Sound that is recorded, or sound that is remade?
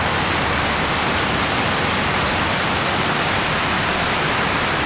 recorded